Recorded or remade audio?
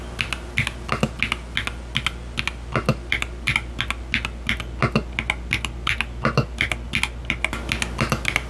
recorded